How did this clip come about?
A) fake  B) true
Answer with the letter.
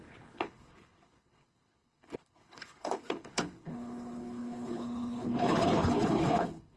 A